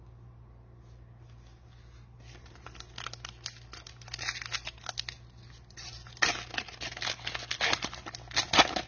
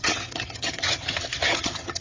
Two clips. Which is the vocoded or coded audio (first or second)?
second